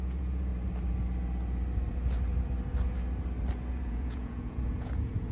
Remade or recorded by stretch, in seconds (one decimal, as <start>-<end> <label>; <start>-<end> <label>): 0.0-0.5 remade; 0.5-3.7 recorded; 3.7-5.3 remade